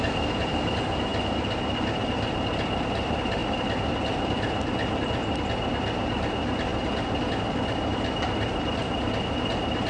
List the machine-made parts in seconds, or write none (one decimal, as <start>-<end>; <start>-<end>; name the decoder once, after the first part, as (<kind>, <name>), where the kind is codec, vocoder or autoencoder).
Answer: none